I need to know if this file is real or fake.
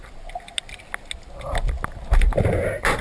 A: real